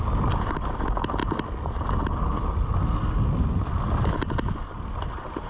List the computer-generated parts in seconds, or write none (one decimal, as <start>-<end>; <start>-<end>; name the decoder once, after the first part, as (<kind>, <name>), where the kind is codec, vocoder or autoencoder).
none